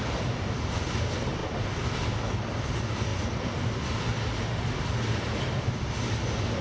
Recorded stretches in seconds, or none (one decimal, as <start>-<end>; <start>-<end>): 0.0-6.6